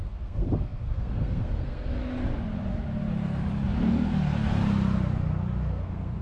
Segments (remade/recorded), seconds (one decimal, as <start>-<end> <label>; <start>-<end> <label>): 0.0-2.0 remade; 2.0-5.7 recorded; 5.7-6.2 remade